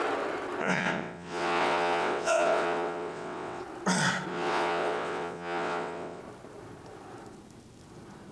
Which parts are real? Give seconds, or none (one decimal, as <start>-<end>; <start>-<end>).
0.0-0.6; 3.6-4.3; 6.2-8.3